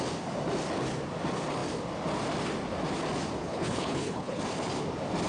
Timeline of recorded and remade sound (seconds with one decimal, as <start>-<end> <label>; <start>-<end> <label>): 0.0-3.4 recorded; 3.4-4.4 remade; 4.4-5.3 recorded